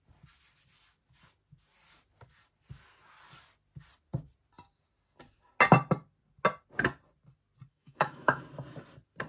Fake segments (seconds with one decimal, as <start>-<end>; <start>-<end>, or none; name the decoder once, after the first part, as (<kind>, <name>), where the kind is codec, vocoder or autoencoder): 7.7-8.4 (autoencoder, DAC-VAE)